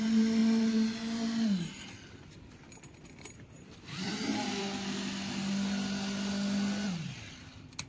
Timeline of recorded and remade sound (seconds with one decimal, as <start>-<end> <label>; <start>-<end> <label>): 0.0-7.9 recorded